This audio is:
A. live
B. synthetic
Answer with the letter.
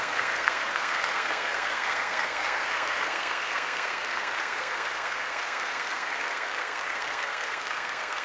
B